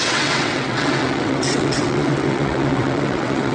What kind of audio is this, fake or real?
fake